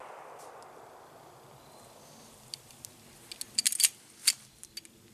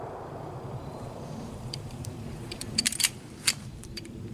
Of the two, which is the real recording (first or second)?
first